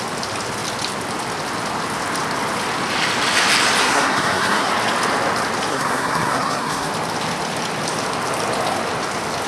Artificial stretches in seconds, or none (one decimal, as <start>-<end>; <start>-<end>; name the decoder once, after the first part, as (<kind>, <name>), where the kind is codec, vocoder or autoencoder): 3.8-4.7 (codec, SNAC); 5.7-6.9